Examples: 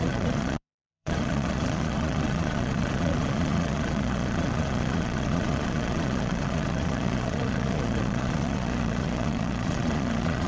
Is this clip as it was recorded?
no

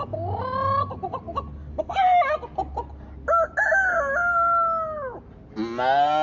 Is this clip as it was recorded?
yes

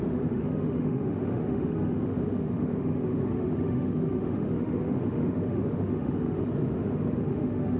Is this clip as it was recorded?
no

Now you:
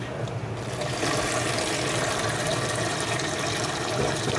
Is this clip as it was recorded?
yes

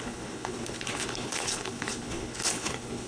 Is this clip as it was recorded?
no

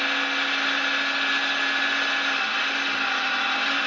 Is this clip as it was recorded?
yes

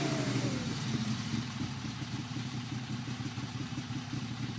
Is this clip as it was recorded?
no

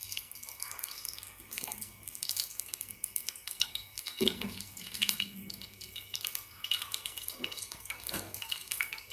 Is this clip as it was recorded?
no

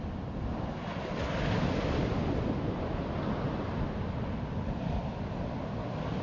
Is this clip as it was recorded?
yes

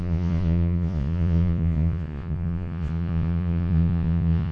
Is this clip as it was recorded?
no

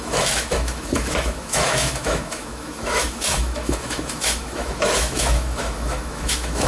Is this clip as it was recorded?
no